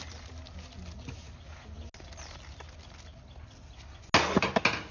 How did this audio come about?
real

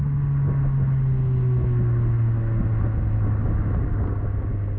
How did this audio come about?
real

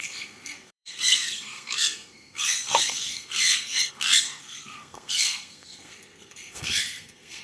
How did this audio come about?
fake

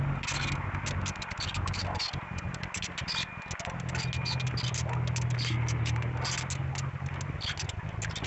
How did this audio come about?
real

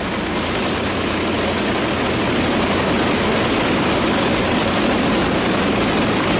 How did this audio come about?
real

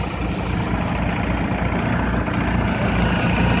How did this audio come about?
real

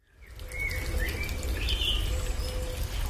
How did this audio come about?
real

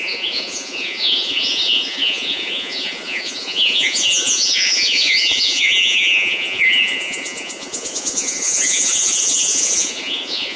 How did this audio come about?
fake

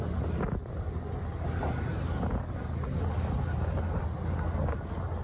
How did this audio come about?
real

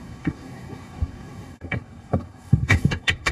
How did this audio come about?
fake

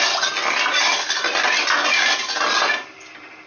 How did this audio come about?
real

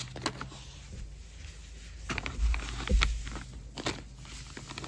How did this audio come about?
real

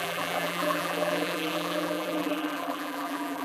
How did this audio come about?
fake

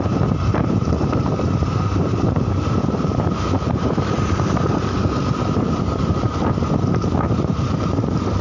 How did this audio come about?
fake